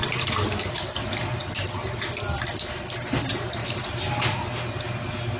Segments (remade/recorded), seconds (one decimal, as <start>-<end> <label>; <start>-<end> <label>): 0.0-5.4 recorded